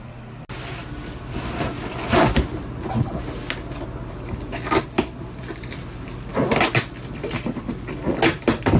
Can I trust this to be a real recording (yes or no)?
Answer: yes